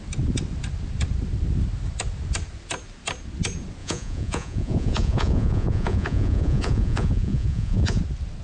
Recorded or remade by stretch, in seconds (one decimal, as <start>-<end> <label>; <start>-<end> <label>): 0.0-3.8 recorded; 3.8-8.0 remade; 8.0-8.4 recorded